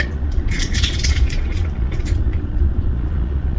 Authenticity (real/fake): fake